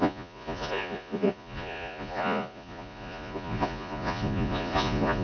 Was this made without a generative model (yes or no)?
no